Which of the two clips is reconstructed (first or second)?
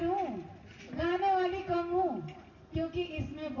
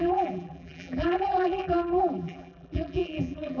second